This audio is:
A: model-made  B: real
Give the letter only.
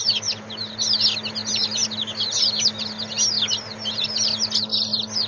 B